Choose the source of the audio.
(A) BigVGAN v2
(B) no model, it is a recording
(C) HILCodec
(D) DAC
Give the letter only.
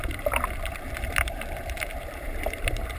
A